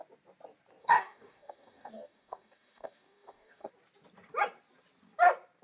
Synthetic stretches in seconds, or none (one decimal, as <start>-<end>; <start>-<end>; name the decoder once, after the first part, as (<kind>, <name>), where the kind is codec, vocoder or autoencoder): 0.8-3.7 (codec, DAC)